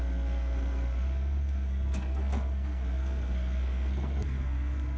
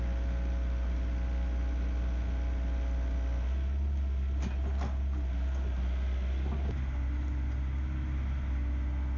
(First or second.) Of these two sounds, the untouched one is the second